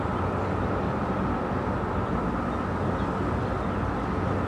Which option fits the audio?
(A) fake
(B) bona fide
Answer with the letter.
B